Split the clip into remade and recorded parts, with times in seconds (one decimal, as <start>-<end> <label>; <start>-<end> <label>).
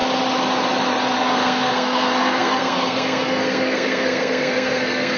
0.0-1.2 recorded; 1.2-5.2 remade